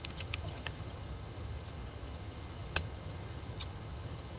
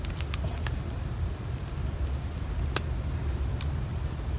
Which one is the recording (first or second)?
second